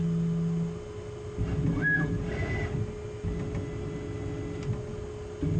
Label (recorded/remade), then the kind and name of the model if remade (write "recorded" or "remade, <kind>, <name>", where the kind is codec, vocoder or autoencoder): recorded